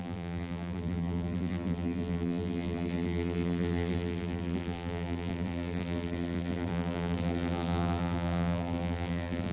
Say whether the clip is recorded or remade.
remade